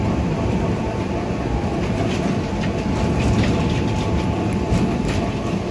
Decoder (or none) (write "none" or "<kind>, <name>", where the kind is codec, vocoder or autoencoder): vocoder, BigVGAN v2